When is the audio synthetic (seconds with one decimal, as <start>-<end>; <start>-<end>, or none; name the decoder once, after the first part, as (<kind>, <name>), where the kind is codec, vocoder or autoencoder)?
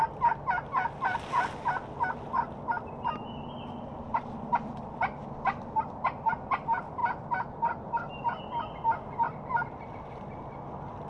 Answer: none